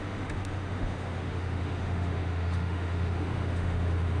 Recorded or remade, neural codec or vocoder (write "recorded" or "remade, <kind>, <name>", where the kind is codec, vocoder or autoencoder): remade, autoencoder, DAC-VAE